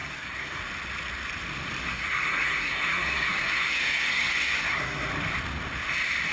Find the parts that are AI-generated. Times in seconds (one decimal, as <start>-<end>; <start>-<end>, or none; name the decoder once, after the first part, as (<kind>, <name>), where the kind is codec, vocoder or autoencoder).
0.0-0.6 (codec, SNAC); 1.9-5.1